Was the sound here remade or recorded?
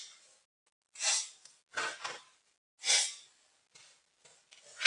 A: recorded